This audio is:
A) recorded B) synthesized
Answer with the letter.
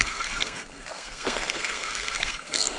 B